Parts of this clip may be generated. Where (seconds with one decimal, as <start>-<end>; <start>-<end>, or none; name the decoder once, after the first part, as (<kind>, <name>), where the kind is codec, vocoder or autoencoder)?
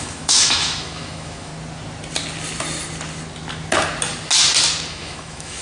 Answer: 0.0-1.5 (autoencoder, DAC-VAE); 4.9-5.6